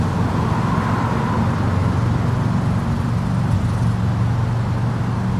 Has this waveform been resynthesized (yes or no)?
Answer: no